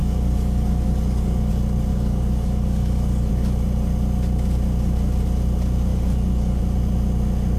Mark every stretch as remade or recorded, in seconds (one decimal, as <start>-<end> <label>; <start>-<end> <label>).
0.0-1.5 remade; 1.5-1.9 recorded; 1.9-3.3 remade; 3.3-5.9 recorded; 5.9-6.6 remade; 6.6-7.6 recorded